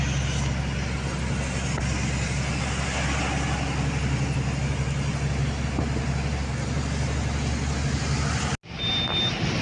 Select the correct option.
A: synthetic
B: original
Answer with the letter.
B